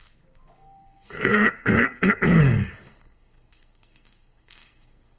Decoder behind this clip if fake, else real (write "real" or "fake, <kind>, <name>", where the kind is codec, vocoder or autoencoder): fake, codec, SNAC